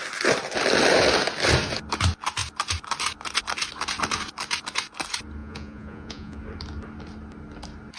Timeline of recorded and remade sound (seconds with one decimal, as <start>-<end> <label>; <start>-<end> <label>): 0.0-5.4 recorded; 5.4-6.4 remade; 6.4-8.0 recorded